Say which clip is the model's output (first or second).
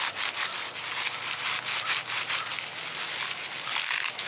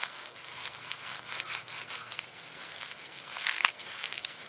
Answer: second